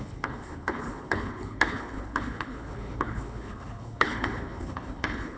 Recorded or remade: remade